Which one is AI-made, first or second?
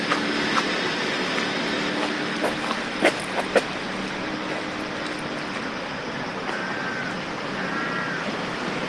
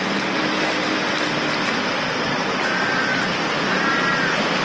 second